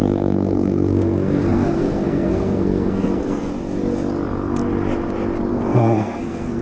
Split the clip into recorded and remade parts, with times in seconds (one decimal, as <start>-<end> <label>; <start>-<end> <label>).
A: 0.0-3.5 remade; 3.5-5.5 recorded; 5.5-6.6 remade